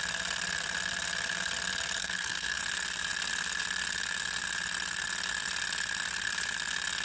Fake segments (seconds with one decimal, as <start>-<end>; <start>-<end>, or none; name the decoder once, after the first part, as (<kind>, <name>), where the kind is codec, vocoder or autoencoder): 2.0-2.6 (codec, SNAC)